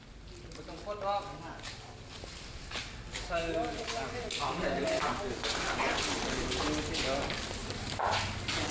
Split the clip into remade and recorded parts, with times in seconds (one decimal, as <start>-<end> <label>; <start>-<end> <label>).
0.0-2.8 recorded; 2.8-3.4 remade; 3.4-7.6 recorded; 7.6-8.2 remade; 8.2-8.7 recorded